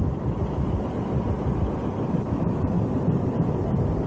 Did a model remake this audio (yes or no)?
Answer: no